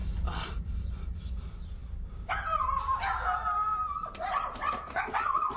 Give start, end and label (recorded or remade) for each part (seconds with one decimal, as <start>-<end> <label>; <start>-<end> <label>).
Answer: 0.0-5.6 recorded